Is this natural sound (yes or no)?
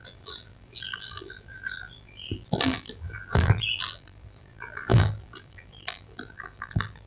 no